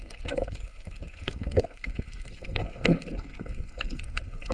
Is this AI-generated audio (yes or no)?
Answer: yes